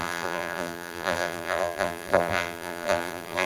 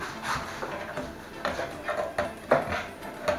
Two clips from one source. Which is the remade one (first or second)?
first